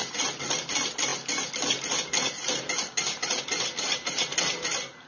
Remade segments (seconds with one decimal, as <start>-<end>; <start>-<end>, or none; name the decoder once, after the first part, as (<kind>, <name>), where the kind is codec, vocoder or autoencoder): none